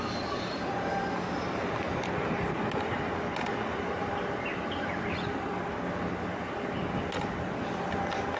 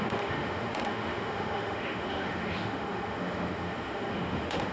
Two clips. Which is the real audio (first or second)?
first